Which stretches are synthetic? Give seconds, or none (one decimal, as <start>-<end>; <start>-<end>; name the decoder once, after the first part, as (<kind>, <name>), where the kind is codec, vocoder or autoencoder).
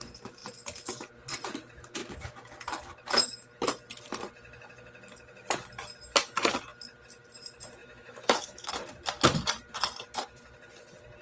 7.8-8.7 (autoencoder, DAC-VAE)